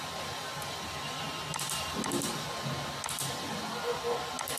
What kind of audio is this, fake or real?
real